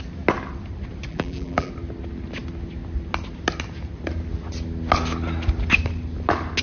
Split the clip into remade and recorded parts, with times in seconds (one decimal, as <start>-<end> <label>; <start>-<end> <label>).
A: 0.0-1.1 recorded; 1.1-1.7 remade; 1.7-6.6 recorded